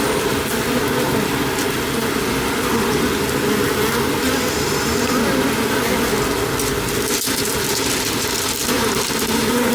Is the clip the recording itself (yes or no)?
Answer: yes